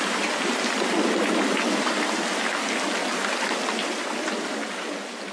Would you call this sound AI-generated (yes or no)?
no